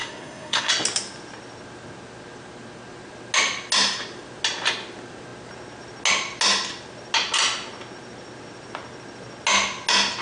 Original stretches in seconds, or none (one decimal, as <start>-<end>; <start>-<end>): 0.7-10.2